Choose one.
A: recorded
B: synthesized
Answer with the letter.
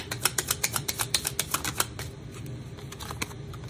B